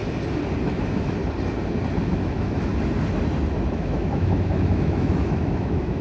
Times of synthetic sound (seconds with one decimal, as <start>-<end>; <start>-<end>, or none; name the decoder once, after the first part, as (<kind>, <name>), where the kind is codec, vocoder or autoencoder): 0.6-1.2 (autoencoder, DAC-VAE); 2.0-2.7; 3.7-6.0